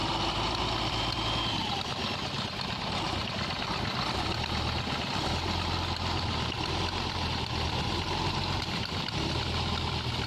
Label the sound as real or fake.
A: real